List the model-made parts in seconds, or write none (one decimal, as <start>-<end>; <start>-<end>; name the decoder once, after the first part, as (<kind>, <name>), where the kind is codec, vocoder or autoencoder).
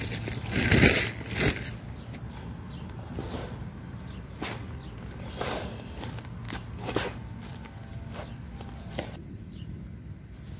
none